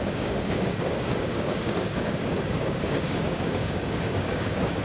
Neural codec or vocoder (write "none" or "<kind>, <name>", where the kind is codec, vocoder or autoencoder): codec, DAC